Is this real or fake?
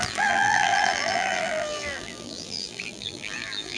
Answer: fake